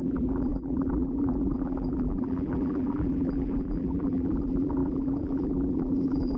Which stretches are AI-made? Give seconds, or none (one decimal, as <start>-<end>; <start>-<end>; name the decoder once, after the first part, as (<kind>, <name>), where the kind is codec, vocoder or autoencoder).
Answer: 0.0-6.4 (vocoder, BigVGAN v2)